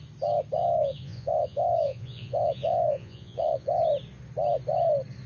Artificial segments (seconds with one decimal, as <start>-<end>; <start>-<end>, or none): 0.6-3.8